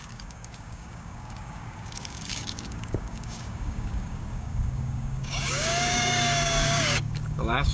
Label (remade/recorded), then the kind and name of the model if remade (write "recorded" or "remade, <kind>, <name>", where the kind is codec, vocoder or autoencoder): remade, codec, DAC